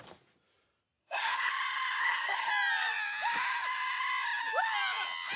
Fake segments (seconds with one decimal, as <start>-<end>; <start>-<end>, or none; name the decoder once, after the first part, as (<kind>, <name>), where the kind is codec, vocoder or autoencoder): 1.0-1.5 (codec, SNAC); 2.0-2.5